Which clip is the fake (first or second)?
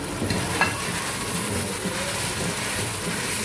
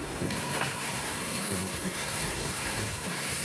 second